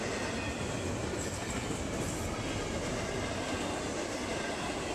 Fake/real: real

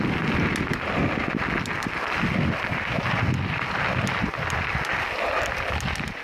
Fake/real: real